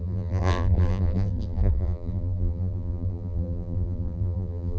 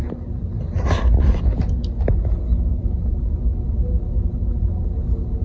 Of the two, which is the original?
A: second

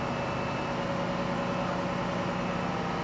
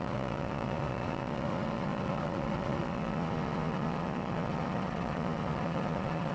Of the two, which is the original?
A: first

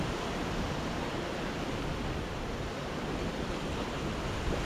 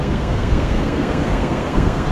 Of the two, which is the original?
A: first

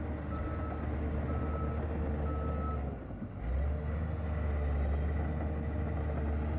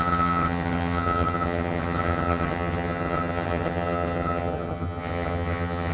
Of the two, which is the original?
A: first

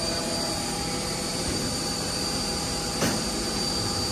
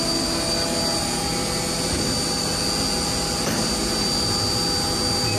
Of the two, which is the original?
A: second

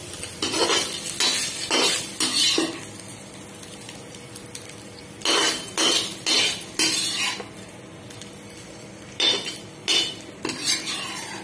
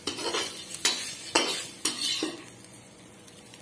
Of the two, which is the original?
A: first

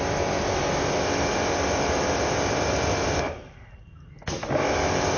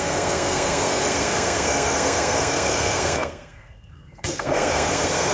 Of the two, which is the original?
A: first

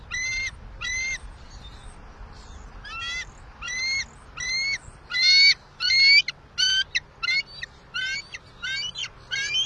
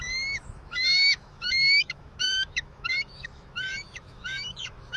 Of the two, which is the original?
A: first